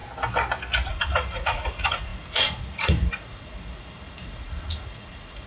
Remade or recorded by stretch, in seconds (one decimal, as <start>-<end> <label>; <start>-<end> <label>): 0.0-0.9 recorded; 0.9-5.5 remade